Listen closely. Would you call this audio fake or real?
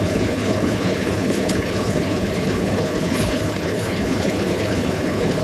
fake